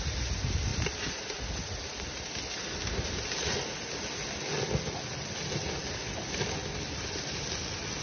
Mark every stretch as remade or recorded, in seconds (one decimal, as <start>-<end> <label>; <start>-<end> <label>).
0.0-8.0 recorded